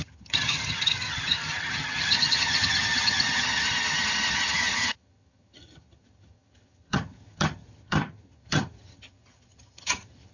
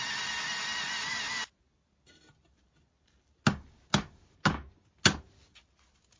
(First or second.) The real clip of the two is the second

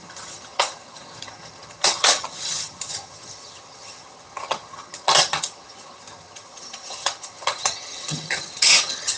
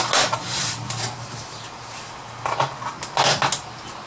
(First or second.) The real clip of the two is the second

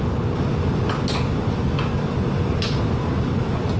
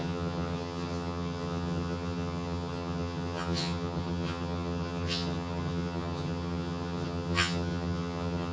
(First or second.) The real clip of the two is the first